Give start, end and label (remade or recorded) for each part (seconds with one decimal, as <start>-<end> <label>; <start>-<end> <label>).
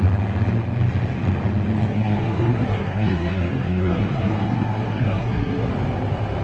0.0-1.9 recorded; 1.9-5.7 remade; 5.7-6.4 recorded